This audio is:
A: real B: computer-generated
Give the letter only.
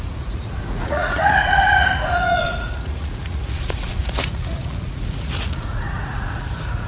B